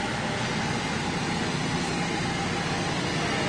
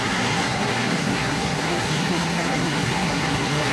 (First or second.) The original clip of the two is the first